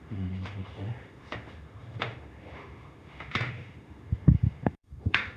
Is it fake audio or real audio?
fake